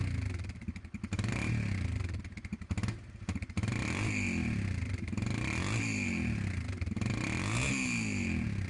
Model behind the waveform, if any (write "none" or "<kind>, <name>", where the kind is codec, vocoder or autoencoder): none